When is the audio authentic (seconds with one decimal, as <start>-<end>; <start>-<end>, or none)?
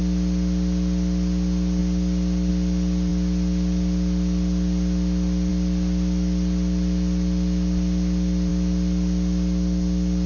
0.0-10.3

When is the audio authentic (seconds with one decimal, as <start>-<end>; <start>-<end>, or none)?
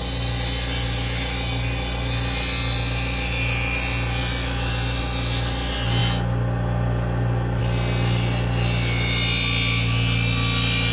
0.0-10.9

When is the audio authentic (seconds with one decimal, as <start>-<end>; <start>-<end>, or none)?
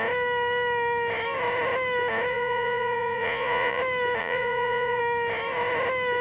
0.0-2.3; 3.8-4.2; 5.0-6.2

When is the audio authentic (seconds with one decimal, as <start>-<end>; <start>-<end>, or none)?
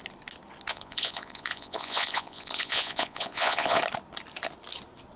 0.0-0.7; 3.8-5.2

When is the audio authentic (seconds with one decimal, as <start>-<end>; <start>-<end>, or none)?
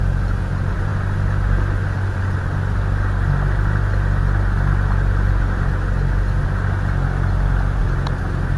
0.0-8.6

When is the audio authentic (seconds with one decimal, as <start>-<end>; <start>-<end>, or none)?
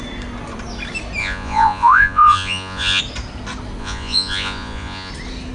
0.0-1.2; 3.0-3.8; 5.1-5.5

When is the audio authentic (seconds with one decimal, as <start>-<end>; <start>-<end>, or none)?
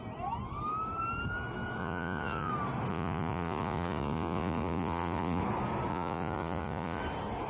0.0-1.8; 2.5-2.9; 5.4-5.9; 7.0-7.5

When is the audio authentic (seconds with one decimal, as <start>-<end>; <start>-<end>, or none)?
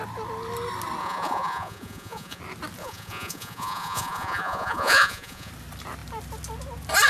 0.0-1.0; 2.4-2.8; 5.5-7.1